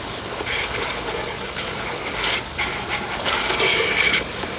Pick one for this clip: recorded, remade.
remade